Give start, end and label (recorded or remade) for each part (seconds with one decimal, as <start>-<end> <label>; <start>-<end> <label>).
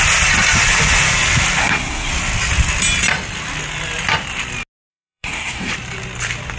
0.0-1.6 recorded; 1.6-2.1 remade; 2.1-4.9 recorded; 4.9-5.7 remade; 5.7-6.6 recorded